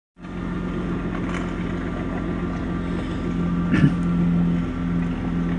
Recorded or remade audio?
recorded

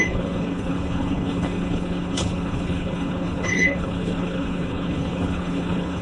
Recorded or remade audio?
remade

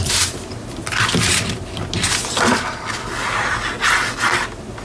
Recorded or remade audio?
recorded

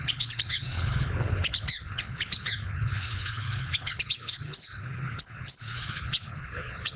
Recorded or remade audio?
remade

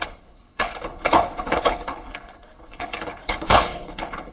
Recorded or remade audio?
remade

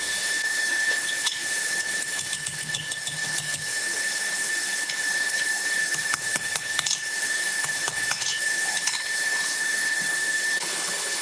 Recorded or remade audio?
remade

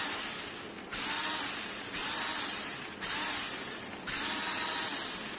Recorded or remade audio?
recorded